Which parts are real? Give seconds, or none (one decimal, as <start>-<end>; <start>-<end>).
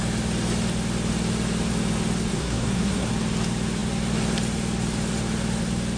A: 0.0-2.3; 3.1-6.0